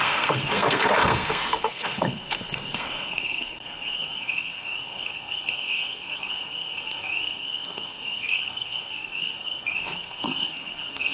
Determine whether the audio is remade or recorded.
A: remade